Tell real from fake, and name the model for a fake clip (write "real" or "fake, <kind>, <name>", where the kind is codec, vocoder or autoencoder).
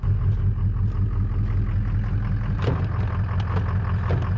real